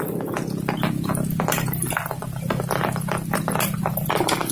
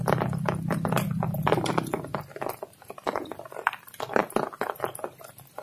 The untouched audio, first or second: first